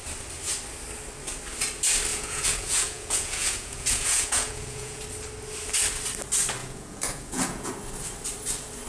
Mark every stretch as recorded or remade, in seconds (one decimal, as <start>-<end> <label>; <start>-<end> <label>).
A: 0.0-2.1 recorded; 2.1-5.0 remade; 5.0-6.6 recorded; 6.6-7.7 remade; 7.7-8.9 recorded